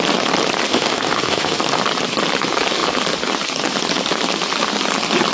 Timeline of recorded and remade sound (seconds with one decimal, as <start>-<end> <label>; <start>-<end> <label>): 0.0-0.7 recorded; 0.7-1.6 remade; 1.6-5.3 recorded